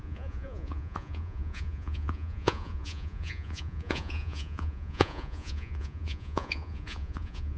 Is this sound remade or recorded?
remade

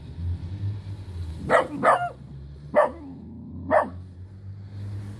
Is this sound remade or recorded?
recorded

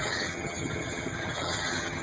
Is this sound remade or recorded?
remade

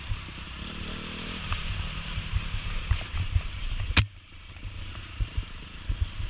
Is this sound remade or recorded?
remade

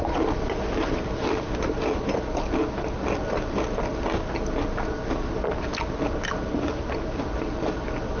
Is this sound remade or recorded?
recorded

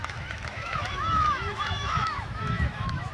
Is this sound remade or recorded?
remade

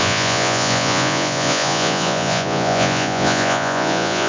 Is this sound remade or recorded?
remade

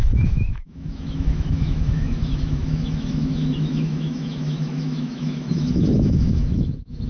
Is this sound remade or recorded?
remade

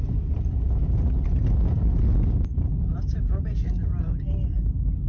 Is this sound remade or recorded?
recorded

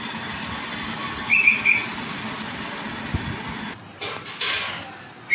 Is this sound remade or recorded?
recorded